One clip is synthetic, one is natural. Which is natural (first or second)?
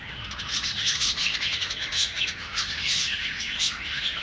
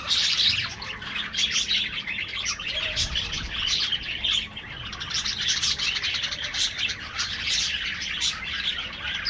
second